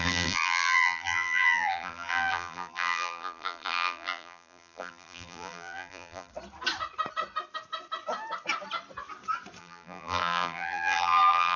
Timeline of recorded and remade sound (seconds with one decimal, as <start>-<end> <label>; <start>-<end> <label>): 0.0-6.3 remade; 6.3-9.6 recorded; 9.6-11.6 remade